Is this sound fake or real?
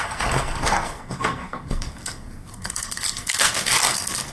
fake